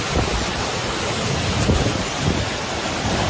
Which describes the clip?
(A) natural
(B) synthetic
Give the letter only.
A